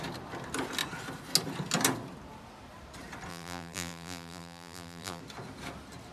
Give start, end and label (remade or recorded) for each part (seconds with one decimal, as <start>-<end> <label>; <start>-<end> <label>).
0.0-3.3 recorded; 3.3-5.2 remade; 5.2-6.1 recorded

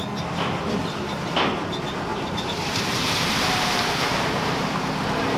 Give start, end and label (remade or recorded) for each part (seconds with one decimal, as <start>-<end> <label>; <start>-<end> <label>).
0.0-2.1 recorded; 2.1-5.4 remade

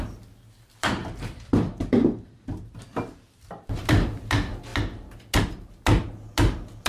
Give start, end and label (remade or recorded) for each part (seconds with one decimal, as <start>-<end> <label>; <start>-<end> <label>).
0.0-1.0 recorded; 1.0-4.3 remade; 4.3-6.9 recorded